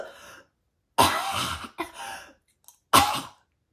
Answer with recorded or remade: recorded